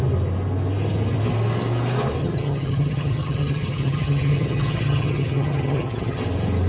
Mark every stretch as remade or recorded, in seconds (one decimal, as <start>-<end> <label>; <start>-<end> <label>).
0.0-2.2 recorded; 2.2-6.2 remade; 6.2-6.7 recorded